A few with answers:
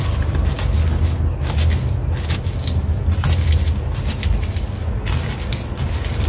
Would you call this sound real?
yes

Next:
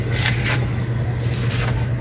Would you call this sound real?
yes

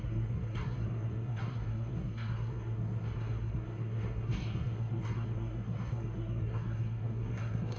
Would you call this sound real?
no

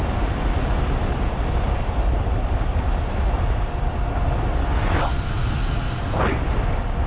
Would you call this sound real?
yes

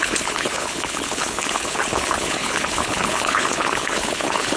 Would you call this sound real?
no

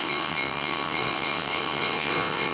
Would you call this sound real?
no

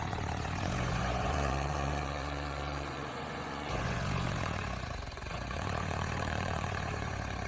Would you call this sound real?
no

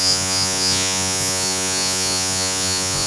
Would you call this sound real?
no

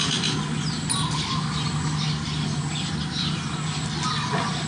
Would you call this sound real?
yes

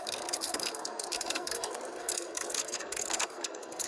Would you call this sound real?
no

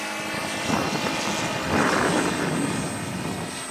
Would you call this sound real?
yes